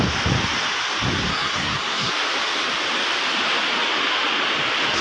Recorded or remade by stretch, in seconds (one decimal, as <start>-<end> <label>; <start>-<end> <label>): 0.0-1.3 recorded; 1.3-2.1 remade; 2.1-5.0 recorded

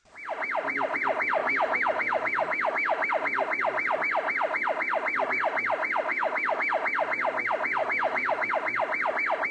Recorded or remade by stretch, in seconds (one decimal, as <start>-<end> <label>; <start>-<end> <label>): 0.0-1.4 recorded; 1.4-3.1 remade; 3.1-6.1 recorded; 6.1-6.7 remade; 6.7-7.8 recorded; 7.8-8.5 remade; 8.5-9.5 recorded